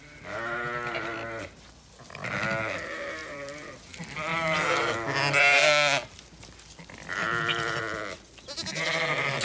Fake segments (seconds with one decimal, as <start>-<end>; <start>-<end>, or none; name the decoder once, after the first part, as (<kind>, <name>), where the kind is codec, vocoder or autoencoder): 3.2-3.7 (vocoder, BigVGAN v2); 7.2-7.8